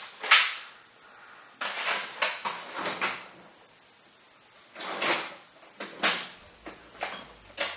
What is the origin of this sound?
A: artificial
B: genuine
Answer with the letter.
B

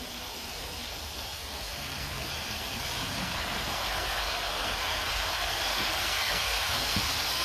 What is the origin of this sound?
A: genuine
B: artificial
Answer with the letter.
B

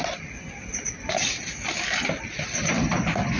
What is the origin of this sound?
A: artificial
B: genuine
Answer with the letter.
B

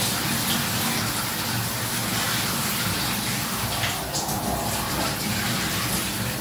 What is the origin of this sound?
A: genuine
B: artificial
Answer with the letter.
A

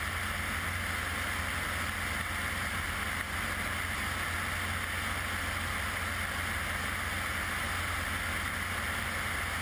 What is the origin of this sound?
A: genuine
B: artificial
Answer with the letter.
A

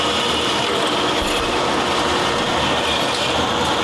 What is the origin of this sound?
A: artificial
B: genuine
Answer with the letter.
B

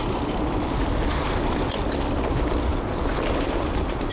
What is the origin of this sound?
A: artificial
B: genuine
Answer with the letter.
B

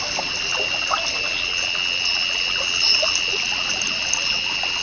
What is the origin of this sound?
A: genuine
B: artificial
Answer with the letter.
A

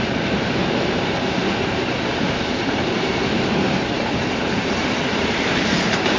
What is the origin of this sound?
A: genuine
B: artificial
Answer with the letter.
B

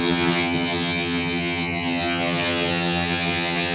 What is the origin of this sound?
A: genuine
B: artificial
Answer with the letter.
B